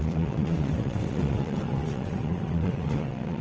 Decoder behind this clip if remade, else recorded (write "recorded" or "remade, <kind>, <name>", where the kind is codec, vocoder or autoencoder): remade, vocoder, WaveNeXt